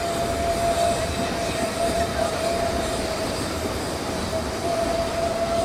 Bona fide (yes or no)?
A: yes